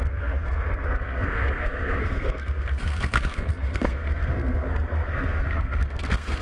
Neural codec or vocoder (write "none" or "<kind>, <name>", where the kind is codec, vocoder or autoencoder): codec, SNAC